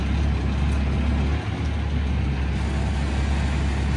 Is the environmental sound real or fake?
real